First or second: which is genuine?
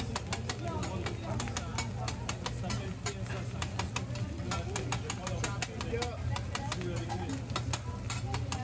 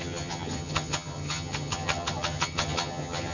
first